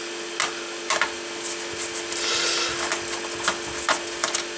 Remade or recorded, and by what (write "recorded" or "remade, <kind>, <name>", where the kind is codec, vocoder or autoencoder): recorded